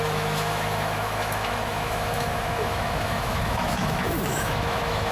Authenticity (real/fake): fake